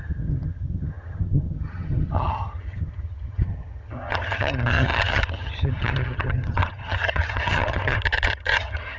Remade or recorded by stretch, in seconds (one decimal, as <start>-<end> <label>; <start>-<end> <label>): 0.0-9.0 remade